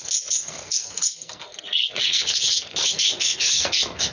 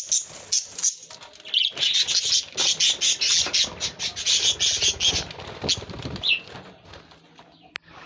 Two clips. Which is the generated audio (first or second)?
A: first